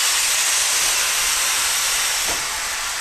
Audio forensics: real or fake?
real